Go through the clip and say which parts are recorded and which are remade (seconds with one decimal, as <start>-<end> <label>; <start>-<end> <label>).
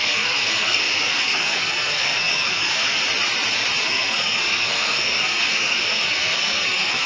0.0-3.0 remade; 3.0-3.8 recorded; 3.8-7.1 remade